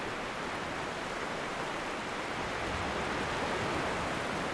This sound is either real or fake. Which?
real